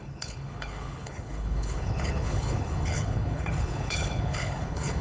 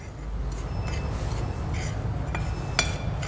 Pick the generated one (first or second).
first